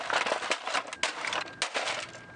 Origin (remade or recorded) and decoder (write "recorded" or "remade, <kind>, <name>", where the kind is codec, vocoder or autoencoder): recorded